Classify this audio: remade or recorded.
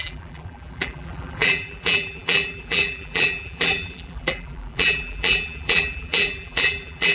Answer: remade